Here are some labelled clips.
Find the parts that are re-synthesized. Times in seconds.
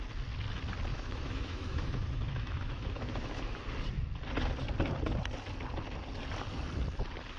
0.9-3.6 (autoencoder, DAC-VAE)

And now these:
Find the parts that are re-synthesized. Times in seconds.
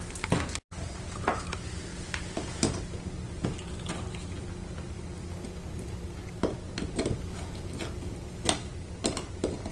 none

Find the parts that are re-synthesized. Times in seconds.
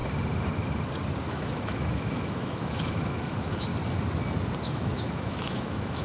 1.3-3.7 (autoencoder, DAC-VAE); 4.6-6.0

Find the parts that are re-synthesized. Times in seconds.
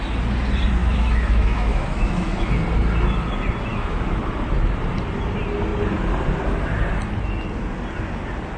0.8-2.5 (autoencoder, DAC-VAE); 3.7-4.2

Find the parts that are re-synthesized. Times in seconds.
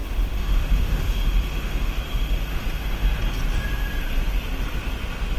0.0-3.2 (autoencoder, DAC-VAE)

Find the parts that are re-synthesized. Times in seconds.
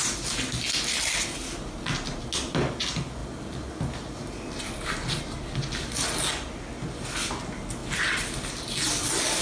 none